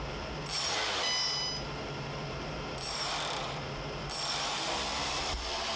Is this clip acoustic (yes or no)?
yes